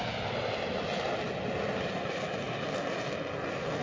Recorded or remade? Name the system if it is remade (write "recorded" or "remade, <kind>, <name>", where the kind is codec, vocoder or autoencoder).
recorded